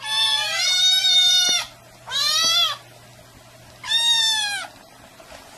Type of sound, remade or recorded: recorded